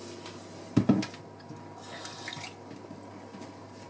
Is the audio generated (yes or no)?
no